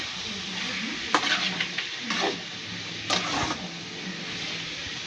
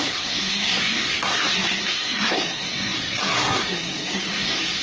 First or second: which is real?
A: first